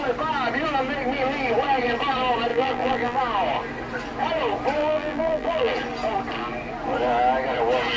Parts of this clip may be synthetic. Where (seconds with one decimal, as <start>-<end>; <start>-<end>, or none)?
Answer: 2.5-3.2; 4.8-5.7